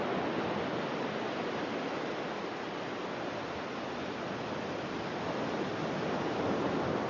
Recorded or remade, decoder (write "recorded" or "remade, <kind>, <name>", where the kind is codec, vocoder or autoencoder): recorded